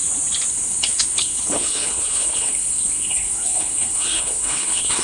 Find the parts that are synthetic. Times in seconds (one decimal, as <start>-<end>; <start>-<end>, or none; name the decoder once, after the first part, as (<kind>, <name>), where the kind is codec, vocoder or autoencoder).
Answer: 0.5-5.0 (codec, HILCodec)